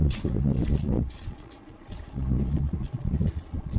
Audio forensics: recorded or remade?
remade